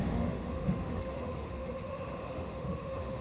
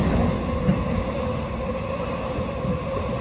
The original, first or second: second